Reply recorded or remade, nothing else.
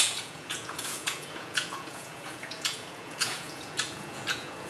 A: remade